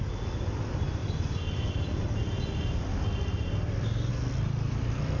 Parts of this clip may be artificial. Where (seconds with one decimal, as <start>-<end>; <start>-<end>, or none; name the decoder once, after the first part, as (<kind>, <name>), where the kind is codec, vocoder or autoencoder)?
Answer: none